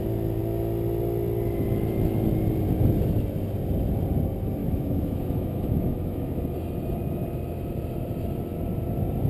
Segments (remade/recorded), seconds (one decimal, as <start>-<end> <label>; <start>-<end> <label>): 0.0-4.6 recorded; 4.6-6.4 remade; 6.4-9.3 recorded